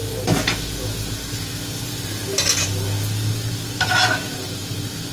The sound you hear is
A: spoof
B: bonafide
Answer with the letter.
B